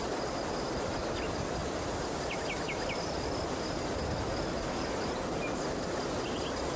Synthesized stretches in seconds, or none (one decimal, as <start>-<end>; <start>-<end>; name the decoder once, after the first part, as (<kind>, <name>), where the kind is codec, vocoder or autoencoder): none